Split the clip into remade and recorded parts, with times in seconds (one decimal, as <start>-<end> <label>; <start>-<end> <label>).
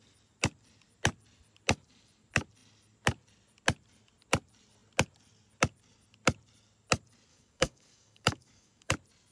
0.0-7.3 recorded; 7.3-8.9 remade; 8.9-9.3 recorded